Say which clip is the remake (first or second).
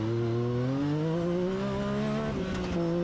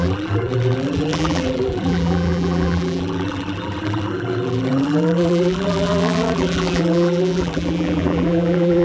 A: second